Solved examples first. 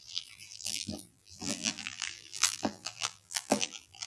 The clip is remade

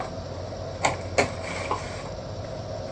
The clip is recorded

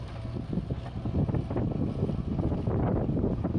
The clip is recorded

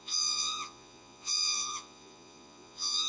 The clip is remade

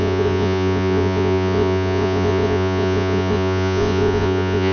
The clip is remade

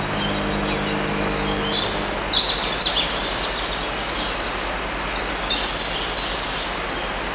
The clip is recorded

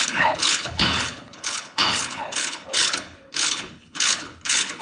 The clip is remade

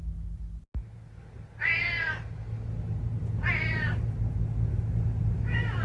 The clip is recorded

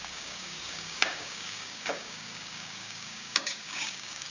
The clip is remade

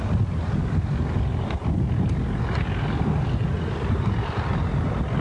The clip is recorded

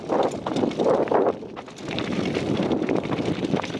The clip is recorded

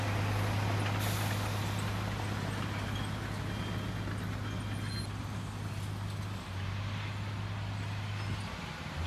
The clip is recorded